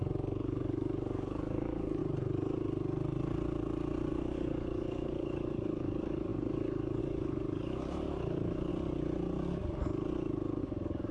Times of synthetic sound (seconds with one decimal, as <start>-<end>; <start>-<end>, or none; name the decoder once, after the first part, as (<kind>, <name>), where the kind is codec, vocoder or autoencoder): 0.0-2.0 (codec, DAC); 4.1-8.7; 10.6-11.1